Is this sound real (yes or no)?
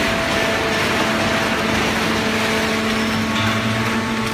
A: yes